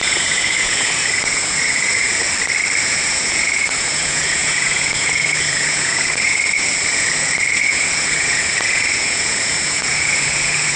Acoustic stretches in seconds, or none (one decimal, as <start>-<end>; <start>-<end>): 2.2-2.8